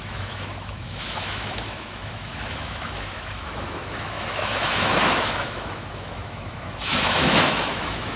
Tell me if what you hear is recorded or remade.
remade